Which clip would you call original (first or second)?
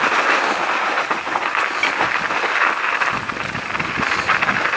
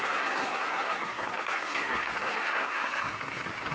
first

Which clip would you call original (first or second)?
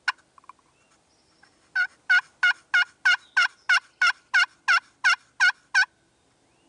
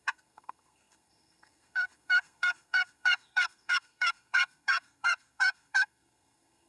first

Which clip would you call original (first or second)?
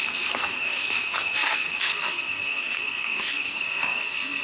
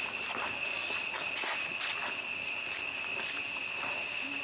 second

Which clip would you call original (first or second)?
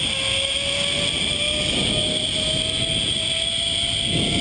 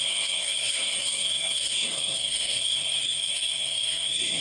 first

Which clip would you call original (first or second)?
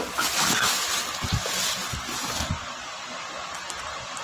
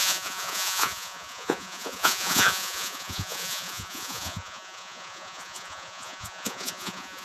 first